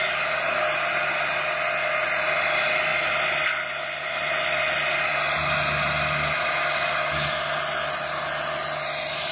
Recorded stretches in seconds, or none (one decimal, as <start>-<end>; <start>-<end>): 0.0-9.3